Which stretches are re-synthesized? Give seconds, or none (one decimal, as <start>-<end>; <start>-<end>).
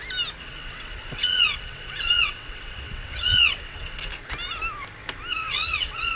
0.4-4.1; 5.3-6.2